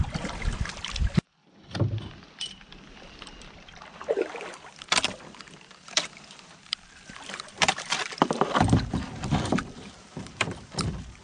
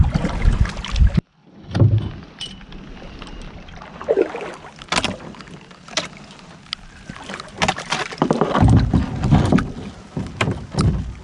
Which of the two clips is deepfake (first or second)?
first